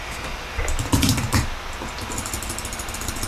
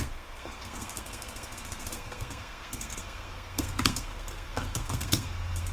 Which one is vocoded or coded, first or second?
second